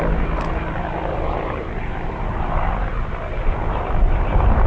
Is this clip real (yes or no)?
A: yes